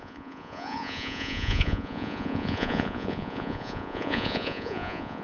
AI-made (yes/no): yes